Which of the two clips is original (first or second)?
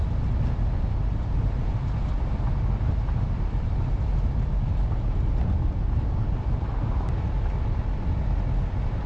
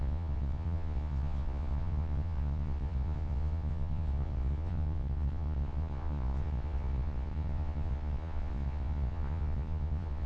first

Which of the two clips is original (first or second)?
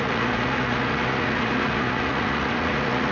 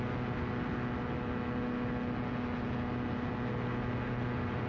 second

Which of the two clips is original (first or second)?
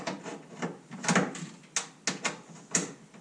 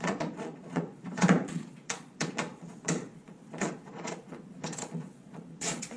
first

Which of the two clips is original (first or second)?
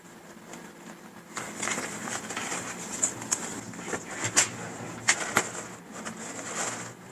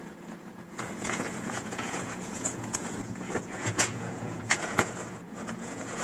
first